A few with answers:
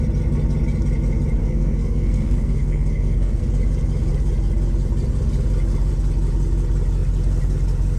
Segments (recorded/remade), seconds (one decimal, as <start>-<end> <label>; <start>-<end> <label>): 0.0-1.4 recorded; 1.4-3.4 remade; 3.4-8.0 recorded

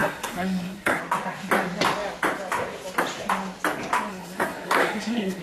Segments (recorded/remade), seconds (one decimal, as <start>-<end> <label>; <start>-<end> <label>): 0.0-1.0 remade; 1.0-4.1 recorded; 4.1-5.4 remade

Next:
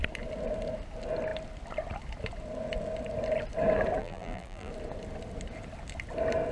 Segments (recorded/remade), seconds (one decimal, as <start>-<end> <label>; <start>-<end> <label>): 0.0-4.0 recorded; 4.0-4.7 remade; 4.7-6.5 recorded

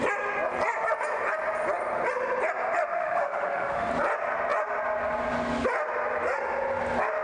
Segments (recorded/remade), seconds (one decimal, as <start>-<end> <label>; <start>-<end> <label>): 0.0-2.9 recorded; 2.9-3.9 remade; 3.9-7.2 recorded

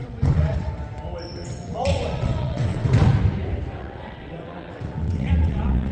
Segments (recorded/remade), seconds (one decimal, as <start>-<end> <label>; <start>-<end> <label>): 0.0-0.7 remade; 0.7-1.4 recorded; 1.4-3.1 remade; 3.1-3.8 recorded; 3.8-5.9 remade

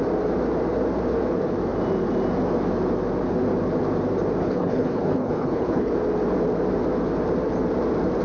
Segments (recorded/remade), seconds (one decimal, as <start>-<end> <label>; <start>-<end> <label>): 0.0-4.4 recorded; 4.4-5.9 remade; 5.9-8.2 recorded

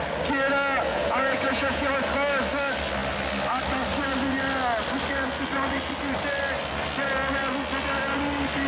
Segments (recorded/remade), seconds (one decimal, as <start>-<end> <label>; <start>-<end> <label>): 0.0-0.9 recorded; 0.9-1.9 remade; 1.9-8.7 recorded